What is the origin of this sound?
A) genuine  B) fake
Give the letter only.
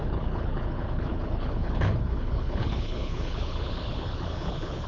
B